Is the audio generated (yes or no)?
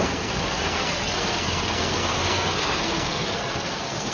yes